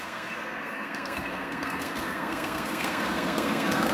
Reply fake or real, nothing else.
fake